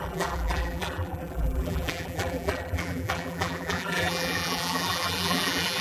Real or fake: fake